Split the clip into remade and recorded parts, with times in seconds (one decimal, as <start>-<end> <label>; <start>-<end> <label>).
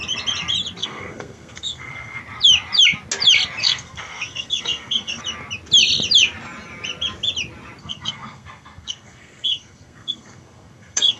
0.0-0.8 recorded; 0.8-2.2 remade; 2.2-3.6 recorded; 3.6-5.2 remade; 5.2-7.8 recorded; 7.8-11.2 remade